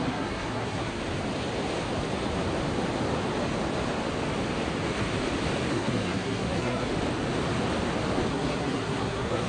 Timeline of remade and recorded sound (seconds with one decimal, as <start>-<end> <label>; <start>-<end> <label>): 0.0-1.0 remade; 1.0-5.7 recorded; 5.7-6.9 remade; 6.9-8.3 recorded; 8.3-9.5 remade